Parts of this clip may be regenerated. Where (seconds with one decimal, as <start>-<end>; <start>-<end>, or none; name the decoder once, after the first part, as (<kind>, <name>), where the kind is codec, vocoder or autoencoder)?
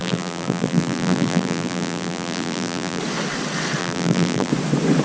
0.0-3.0 (vocoder, BigVGAN v2); 3.8-4.5